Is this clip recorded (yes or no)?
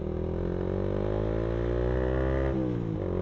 yes